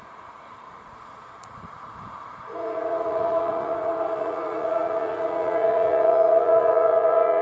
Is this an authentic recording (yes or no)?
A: no